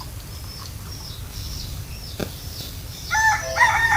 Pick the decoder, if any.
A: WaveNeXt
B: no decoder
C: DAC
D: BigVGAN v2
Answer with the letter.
D